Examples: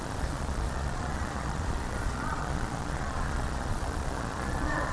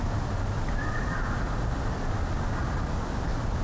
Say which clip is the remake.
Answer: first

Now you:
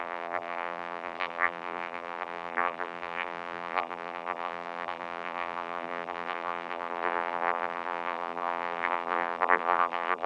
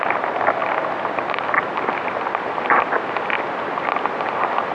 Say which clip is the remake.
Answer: first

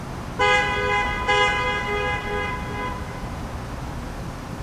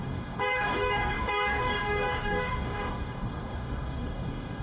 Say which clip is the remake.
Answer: second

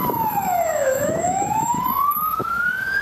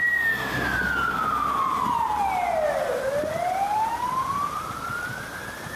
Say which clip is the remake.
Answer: first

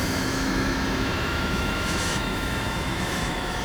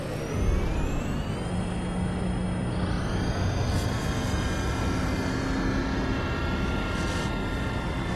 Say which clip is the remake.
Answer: first